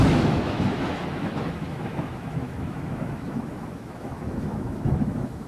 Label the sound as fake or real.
fake